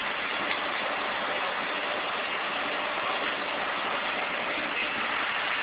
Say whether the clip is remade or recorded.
recorded